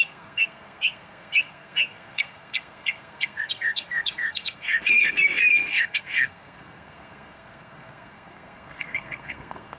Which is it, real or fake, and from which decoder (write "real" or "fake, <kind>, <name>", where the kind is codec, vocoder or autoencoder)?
fake, codec, SNAC